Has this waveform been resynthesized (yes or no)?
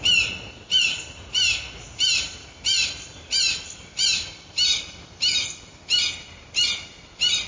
no